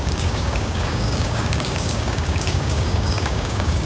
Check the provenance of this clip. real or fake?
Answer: fake